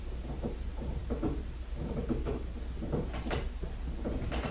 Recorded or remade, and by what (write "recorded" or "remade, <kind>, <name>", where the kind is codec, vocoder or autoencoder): recorded